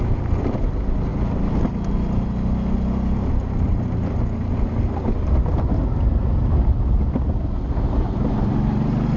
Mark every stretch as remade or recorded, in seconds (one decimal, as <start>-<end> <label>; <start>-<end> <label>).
0.0-9.2 recorded